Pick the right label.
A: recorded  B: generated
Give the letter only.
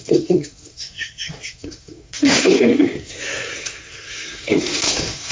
B